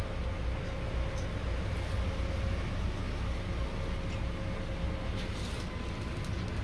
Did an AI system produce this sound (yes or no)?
no